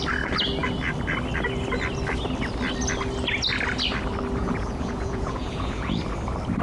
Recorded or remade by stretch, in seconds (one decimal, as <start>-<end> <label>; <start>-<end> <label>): 0.0-4.4 recorded; 4.4-6.0 remade; 6.0-6.6 recorded